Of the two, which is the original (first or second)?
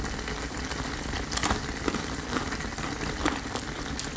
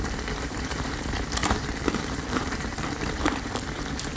first